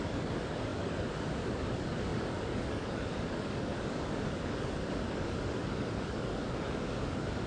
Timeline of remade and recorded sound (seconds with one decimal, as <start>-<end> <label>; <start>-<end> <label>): 0.0-7.5 remade